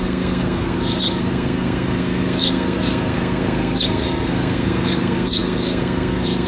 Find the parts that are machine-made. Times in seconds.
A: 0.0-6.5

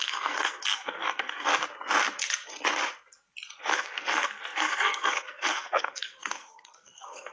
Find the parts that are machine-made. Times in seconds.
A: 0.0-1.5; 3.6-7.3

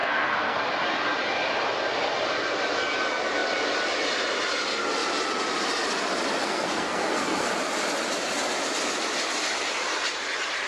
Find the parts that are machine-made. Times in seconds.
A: 0.0-0.6; 6.4-7.5